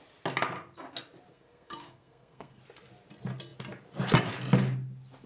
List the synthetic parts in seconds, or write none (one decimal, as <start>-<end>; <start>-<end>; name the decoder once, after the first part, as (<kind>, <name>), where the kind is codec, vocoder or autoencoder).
1.3-2.6 (codec, SNAC)